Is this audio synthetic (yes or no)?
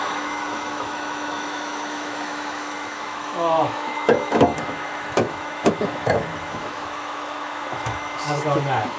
yes